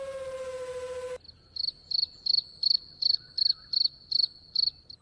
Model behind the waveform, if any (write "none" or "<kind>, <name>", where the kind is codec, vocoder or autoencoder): none